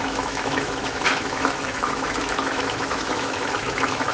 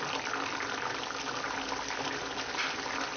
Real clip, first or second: second